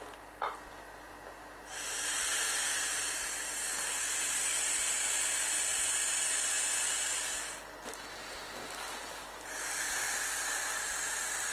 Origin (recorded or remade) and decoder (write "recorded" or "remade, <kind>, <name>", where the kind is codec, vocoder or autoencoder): recorded